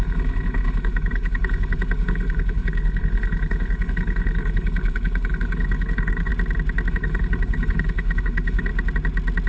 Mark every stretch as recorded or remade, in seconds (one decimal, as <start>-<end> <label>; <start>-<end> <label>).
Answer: 0.0-6.3 remade; 6.3-6.9 recorded; 6.9-8.7 remade; 8.7-9.5 recorded